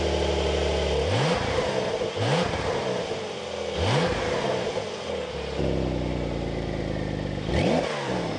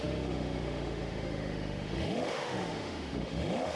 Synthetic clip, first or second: second